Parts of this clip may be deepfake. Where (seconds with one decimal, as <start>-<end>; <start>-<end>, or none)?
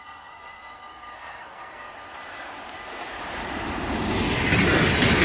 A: 0.0-1.9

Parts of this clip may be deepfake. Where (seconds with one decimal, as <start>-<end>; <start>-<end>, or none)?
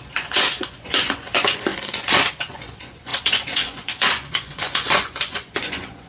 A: 0.0-6.1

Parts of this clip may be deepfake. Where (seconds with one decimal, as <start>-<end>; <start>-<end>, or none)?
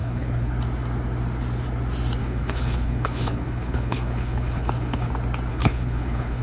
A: 0.0-0.5; 2.2-5.1; 5.5-6.4